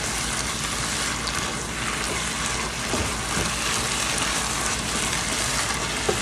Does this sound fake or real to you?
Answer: real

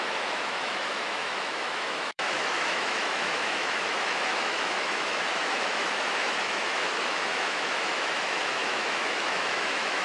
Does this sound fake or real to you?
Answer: fake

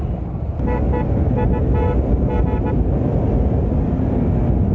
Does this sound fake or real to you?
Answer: real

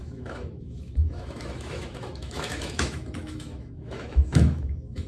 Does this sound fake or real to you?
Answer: fake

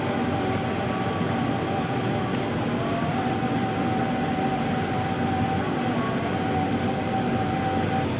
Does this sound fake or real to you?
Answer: real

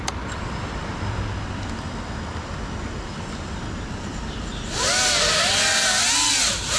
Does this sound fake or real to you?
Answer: real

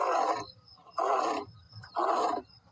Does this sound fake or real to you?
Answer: real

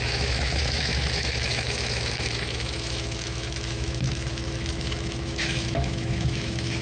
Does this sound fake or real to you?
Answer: fake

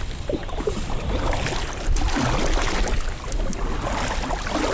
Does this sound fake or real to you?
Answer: real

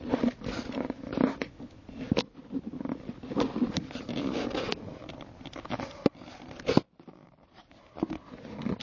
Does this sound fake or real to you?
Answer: real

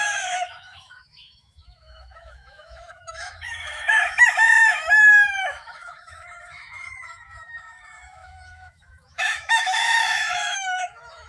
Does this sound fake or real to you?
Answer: fake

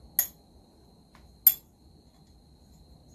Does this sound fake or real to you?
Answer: real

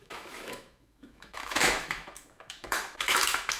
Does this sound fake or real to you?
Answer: fake